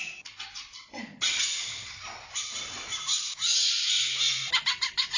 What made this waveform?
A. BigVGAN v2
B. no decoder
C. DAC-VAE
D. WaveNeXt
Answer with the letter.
B